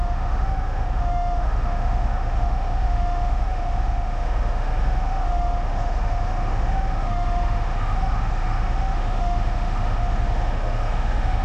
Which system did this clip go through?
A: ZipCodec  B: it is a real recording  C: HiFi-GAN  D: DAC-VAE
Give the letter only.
D